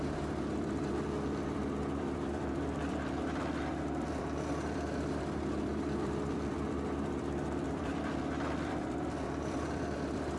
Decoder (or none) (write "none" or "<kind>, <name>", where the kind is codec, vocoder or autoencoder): vocoder, BigVGAN v2